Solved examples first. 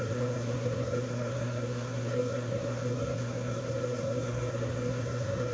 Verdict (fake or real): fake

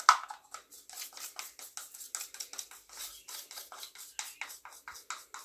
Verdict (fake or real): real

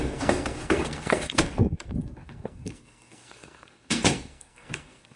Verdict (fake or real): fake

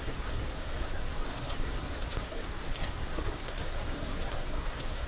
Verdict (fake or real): fake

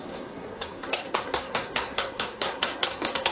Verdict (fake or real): fake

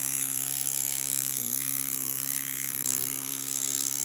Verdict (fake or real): fake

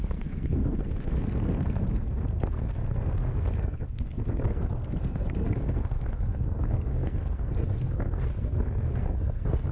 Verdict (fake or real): fake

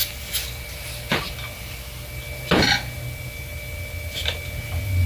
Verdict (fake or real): real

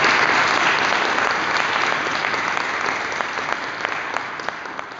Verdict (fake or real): real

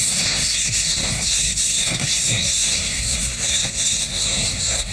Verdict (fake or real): fake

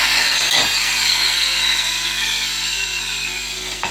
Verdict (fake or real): fake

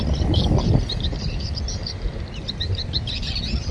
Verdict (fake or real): real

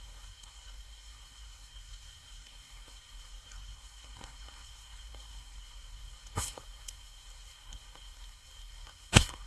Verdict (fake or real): fake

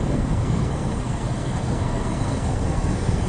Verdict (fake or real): fake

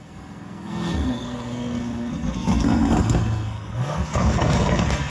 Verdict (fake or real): fake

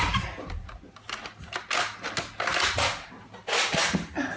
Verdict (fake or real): real